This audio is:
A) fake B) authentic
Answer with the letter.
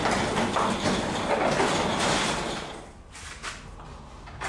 B